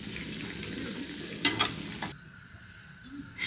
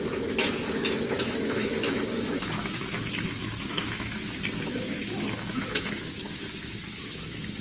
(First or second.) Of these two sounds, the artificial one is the second